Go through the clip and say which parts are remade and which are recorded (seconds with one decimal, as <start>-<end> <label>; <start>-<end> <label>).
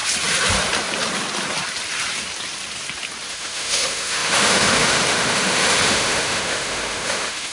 0.0-3.3 recorded; 3.3-7.5 remade